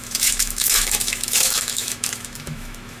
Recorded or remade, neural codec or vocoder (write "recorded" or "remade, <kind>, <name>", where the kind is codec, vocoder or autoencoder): remade, autoencoder, DAC-VAE